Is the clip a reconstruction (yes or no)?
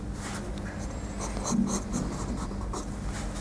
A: no